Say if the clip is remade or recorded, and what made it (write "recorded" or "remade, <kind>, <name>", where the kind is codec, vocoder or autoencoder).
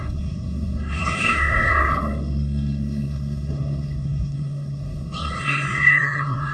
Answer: remade, codec, SNAC